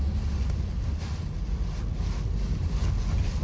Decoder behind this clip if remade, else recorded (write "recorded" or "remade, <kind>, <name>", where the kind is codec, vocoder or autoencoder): recorded